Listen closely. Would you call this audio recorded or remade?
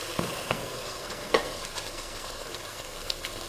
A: remade